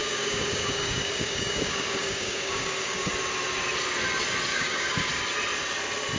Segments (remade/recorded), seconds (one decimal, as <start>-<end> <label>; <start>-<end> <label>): 0.0-3.1 remade; 3.1-4.5 recorded; 4.5-5.1 remade; 5.1-6.2 recorded